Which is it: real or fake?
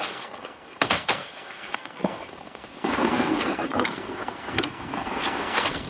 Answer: fake